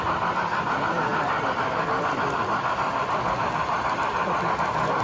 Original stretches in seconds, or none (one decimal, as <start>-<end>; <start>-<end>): 0.0-5.0